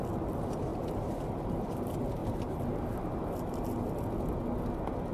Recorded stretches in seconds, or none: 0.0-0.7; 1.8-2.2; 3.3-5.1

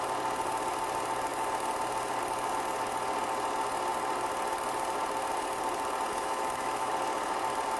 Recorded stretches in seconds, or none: 0.0-6.1; 6.9-7.8

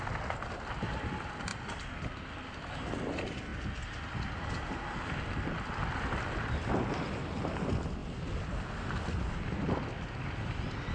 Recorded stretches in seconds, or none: 0.0-8.0; 9.3-10.9

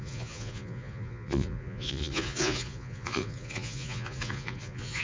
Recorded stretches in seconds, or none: none

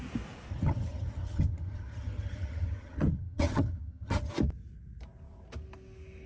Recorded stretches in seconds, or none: 0.0-0.5; 4.3-6.3

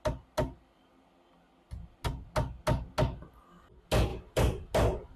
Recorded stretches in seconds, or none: 0.0-4.1; 4.7-5.2